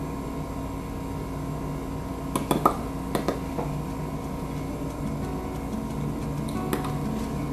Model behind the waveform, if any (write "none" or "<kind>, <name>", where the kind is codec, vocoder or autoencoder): none